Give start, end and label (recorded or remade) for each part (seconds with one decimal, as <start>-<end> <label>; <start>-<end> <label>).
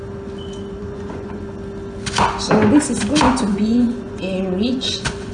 0.0-0.8 recorded; 0.8-1.4 remade; 1.4-3.5 recorded; 3.5-5.3 remade